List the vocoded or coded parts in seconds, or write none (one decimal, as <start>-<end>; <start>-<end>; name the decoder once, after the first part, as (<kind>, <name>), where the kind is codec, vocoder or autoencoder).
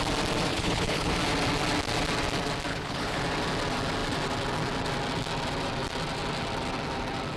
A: 0.5-1.1 (codec, HILCodec); 2.7-3.2